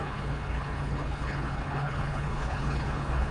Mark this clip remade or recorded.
remade